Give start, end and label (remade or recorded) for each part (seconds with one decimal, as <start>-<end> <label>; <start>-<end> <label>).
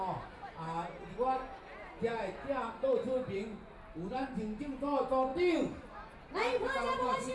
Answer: 0.0-7.3 recorded